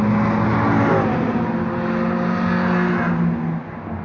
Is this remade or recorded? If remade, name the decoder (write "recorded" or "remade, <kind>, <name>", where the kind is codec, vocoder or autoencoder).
recorded